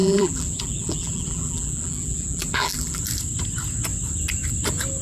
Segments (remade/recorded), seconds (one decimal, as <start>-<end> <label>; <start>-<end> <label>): 0.0-3.0 remade; 3.0-5.0 recorded